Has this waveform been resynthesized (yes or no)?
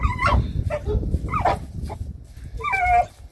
no